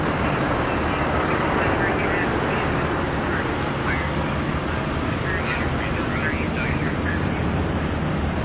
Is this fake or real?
real